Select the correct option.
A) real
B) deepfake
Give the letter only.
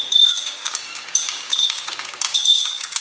B